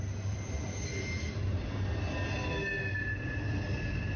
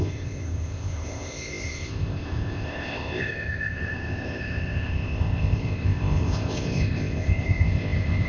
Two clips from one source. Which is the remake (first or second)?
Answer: second